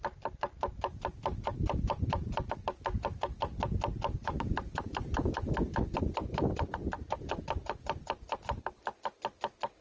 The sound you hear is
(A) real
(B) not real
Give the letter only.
A